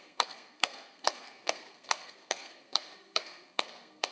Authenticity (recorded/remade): remade